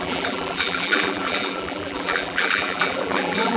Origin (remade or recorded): remade